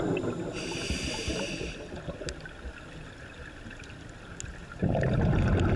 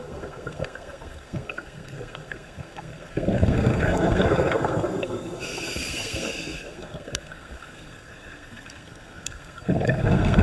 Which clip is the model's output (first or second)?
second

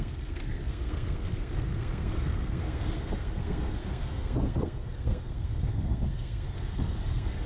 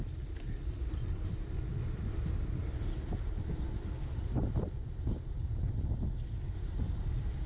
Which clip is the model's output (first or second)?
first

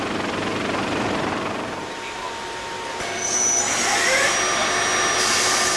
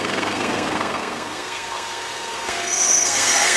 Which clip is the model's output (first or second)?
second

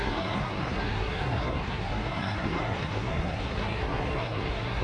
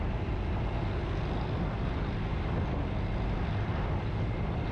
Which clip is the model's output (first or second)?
first